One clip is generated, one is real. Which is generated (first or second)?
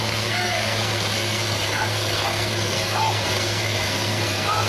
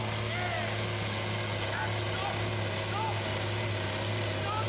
first